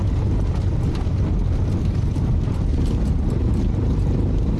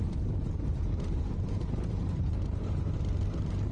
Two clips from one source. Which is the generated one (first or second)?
second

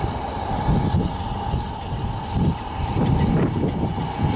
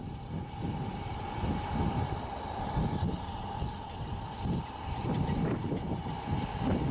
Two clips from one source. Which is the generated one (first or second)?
second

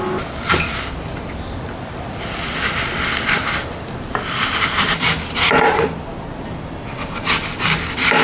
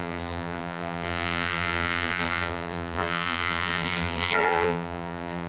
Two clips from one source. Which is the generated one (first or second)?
second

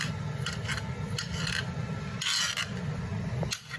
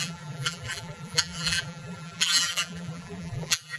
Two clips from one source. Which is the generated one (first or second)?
second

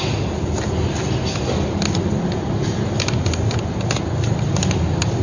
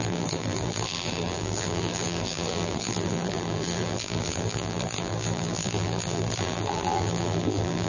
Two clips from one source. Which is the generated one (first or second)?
second